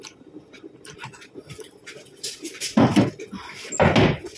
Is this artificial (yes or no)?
no